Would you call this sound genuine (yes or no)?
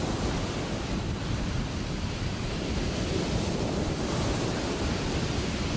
no